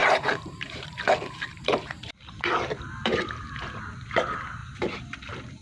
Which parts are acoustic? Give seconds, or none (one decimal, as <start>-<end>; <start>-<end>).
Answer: 0.9-1.5; 3.8-4.6